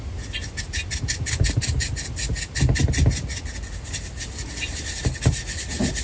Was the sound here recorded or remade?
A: recorded